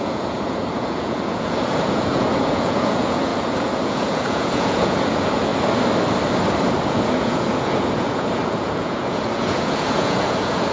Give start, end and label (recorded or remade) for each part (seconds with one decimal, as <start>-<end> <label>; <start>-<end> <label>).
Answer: 0.0-5.5 remade; 5.5-6.9 recorded; 6.9-10.7 remade